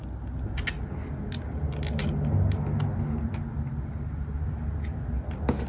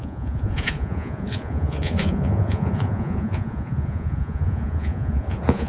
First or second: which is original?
first